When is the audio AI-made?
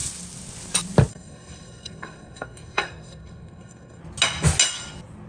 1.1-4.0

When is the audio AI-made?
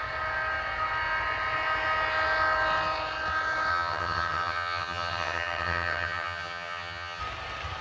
3.7-7.2